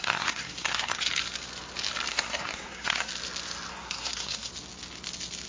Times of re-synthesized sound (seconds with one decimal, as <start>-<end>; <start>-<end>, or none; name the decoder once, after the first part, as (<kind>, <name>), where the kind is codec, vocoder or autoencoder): 0.0-1.1 (codec, SNAC); 2.1-3.1; 3.7-4.5